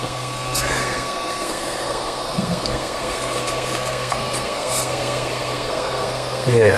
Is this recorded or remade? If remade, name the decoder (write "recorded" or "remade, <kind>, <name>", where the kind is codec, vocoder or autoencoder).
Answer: remade, codec, SNAC